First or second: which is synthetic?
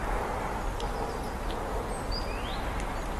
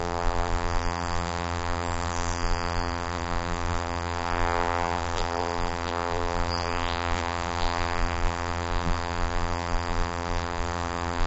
second